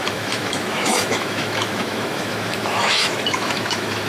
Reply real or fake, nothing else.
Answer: fake